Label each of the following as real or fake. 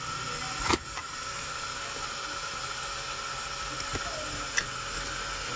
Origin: real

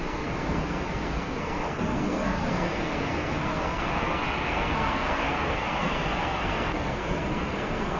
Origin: fake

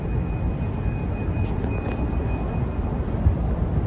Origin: real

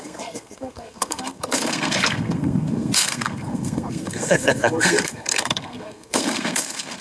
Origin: fake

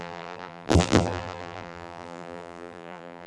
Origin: fake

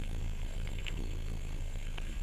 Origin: fake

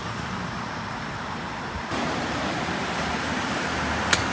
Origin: fake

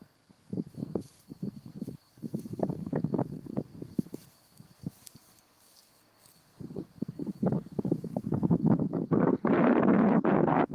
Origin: fake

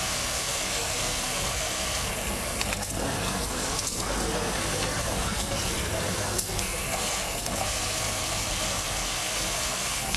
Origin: fake